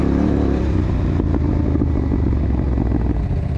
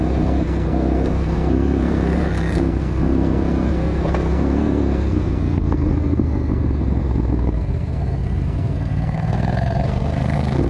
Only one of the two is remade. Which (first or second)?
second